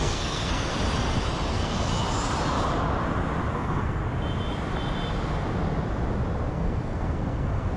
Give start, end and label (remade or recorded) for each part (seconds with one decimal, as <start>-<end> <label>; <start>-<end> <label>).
0.0-0.7 remade; 0.7-1.5 recorded; 1.5-1.9 remade; 1.9-3.5 recorded; 3.5-4.0 remade; 4.0-6.5 recorded; 6.5-7.8 remade